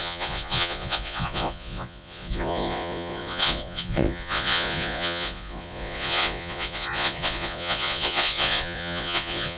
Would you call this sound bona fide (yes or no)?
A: no